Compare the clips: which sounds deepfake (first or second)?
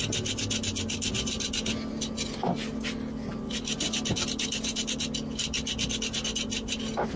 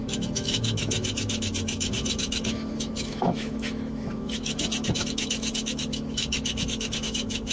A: second